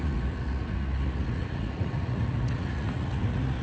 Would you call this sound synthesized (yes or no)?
yes